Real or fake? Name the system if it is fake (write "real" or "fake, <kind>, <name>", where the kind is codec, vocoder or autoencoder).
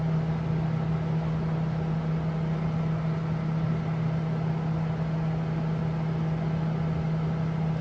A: real